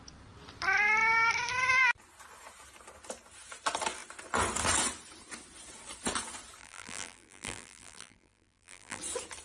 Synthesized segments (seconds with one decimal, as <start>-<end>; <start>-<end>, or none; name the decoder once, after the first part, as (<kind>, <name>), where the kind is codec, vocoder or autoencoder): 6.6-9.0 (vocoder, BigVGAN v2)